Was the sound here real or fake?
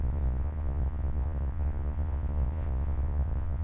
fake